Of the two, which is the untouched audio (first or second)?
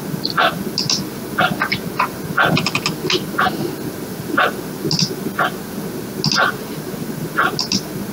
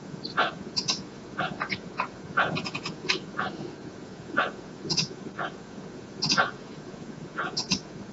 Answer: first